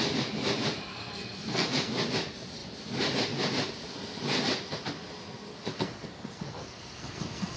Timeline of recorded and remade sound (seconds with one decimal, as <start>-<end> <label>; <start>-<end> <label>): 0.0-0.9 recorded; 0.9-1.9 remade; 1.9-5.5 recorded; 5.5-7.6 remade